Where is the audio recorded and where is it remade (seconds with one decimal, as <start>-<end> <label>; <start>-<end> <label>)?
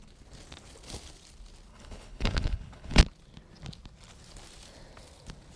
0.0-1.7 recorded; 1.7-3.0 remade; 3.0-5.6 recorded